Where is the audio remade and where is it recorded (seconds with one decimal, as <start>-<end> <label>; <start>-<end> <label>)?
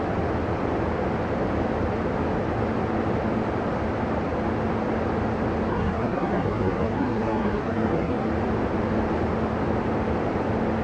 0.0-5.7 recorded; 5.7-8.3 remade; 8.3-10.8 recorded